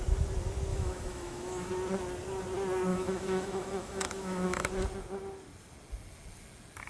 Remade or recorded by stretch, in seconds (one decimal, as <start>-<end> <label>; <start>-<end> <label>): 0.0-0.7 recorded; 0.7-1.7 remade; 1.7-2.9 recorded; 2.9-4.7 remade; 4.7-6.9 recorded

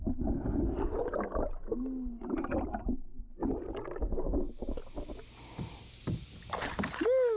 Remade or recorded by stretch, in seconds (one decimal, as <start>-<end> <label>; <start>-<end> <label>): 0.0-7.4 recorded

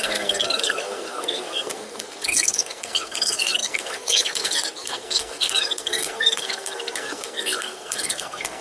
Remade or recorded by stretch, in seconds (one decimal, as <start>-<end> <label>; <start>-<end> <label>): 0.0-8.6 remade

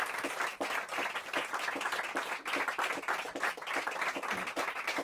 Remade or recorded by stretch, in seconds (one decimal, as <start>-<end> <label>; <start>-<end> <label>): 0.0-5.0 recorded

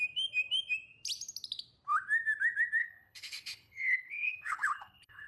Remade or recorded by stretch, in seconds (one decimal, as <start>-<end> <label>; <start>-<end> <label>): 0.0-2.8 recorded; 2.8-5.3 remade

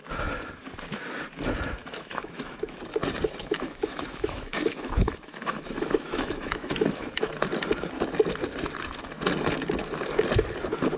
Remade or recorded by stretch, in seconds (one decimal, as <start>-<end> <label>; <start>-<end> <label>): 0.0-1.8 recorded; 1.8-2.8 remade; 2.8-3.4 recorded; 3.4-7.3 remade; 7.3-11.0 recorded

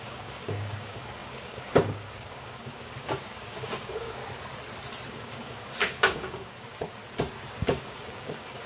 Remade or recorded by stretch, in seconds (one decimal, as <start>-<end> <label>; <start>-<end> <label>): 0.0-4.2 remade; 4.2-5.1 recorded; 5.1-7.0 remade; 7.0-7.6 recorded; 7.6-8.7 remade